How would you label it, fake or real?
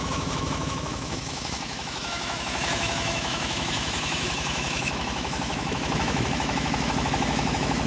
fake